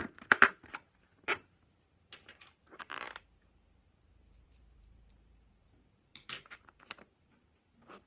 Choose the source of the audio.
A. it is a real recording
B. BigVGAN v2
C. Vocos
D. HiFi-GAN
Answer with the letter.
B